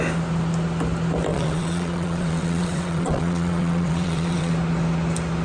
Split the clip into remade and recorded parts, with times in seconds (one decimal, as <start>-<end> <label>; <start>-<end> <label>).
0.0-1.3 recorded; 1.3-4.5 remade; 4.5-5.4 recorded